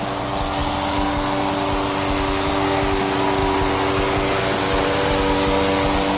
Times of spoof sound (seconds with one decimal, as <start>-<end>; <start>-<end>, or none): none